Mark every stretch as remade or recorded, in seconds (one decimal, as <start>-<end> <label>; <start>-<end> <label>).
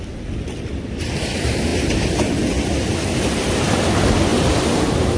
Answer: 0.0-5.2 recorded